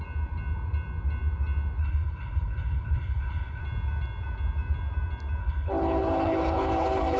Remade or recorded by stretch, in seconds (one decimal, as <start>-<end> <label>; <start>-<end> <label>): 0.0-1.8 recorded; 1.8-3.6 remade; 3.6-5.4 recorded; 5.4-7.2 remade